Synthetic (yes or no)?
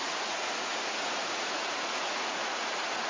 yes